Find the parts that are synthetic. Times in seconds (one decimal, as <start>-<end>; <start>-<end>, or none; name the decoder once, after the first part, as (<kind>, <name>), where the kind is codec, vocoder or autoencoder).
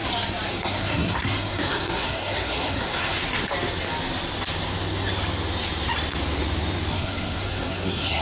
0.5-3.2 (codec, SNAC); 6.9-8.2